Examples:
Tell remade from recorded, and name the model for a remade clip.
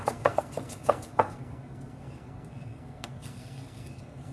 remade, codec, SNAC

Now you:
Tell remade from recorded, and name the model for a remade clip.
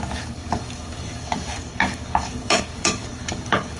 remade, codec, DAC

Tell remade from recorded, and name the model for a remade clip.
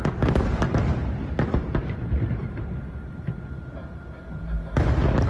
recorded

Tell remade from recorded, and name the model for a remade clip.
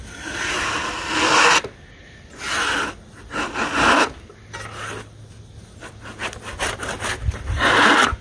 recorded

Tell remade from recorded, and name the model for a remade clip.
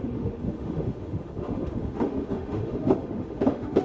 remade, autoencoder, DAC-VAE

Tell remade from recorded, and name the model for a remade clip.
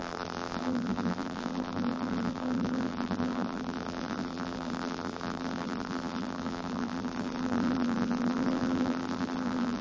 remade, vocoder, BigVGAN v2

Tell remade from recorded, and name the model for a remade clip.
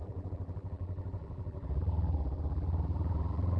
remade, vocoder, BigVGAN v2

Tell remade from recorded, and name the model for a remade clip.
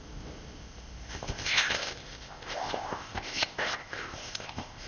remade, codec, ZipCodec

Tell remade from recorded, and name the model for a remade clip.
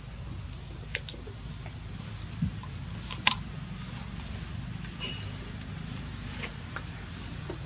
recorded